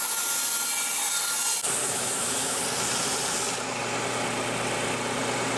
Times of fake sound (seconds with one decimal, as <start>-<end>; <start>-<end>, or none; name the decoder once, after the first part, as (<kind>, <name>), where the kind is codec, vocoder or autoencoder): 1.8-2.6 (autoencoder, DAC-VAE)